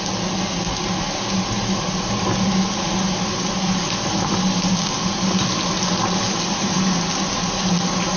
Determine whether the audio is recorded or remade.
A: recorded